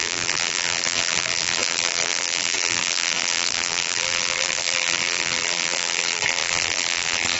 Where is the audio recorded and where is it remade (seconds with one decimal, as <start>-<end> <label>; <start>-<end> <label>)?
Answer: 0.0-7.4 remade